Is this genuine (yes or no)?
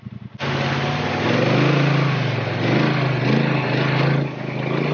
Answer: yes